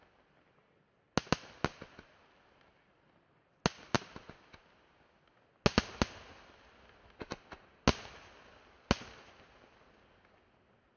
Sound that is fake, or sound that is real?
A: real